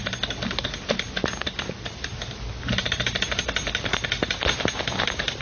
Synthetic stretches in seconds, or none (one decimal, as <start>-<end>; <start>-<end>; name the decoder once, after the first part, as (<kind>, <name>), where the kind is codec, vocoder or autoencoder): none